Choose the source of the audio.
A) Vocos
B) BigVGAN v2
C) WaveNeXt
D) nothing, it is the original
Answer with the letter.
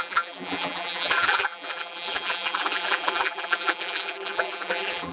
B